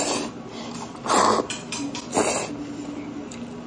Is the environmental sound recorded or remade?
recorded